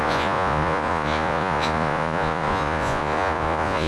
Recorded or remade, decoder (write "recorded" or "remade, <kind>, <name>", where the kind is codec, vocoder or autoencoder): remade, vocoder, Vocos